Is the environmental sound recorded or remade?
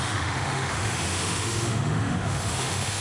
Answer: remade